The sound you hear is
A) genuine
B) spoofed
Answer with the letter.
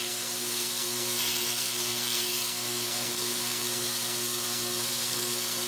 B